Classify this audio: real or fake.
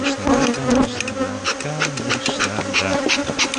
real